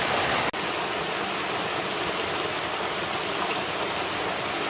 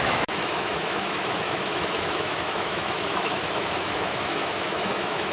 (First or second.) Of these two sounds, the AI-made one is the second